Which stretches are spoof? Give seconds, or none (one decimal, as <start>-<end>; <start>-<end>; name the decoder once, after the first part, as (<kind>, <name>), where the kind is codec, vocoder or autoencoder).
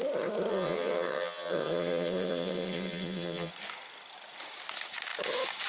0.5-3.5 (vocoder, HiFi-GAN)